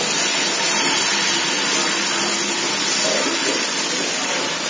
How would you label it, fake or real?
real